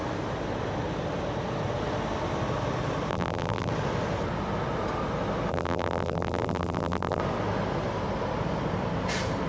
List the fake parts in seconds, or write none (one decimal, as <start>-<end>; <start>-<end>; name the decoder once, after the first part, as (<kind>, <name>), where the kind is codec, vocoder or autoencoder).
3.1-3.7 (vocoder, BigVGAN v2); 5.5-7.2